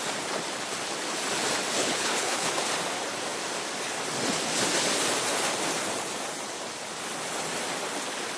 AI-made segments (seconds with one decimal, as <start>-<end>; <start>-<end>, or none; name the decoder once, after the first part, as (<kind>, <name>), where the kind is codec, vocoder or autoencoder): 1.8-2.5 (codec, HILCodec)